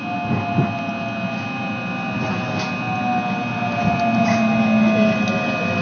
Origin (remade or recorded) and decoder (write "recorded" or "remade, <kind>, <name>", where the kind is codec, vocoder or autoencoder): recorded